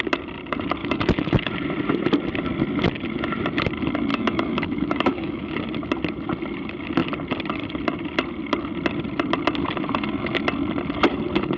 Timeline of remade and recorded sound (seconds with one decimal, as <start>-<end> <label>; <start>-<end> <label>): 0.0-0.8 recorded; 0.8-1.5 remade; 1.5-4.1 recorded; 4.1-5.5 remade; 5.5-11.6 recorded